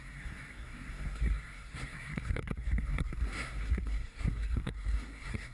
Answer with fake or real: fake